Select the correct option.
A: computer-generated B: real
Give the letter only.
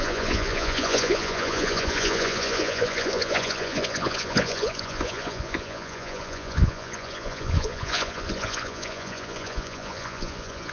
A